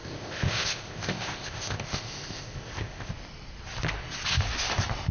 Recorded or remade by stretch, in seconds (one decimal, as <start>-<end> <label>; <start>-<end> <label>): 0.0-3.1 remade; 3.1-5.1 recorded